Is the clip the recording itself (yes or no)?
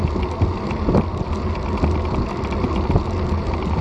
yes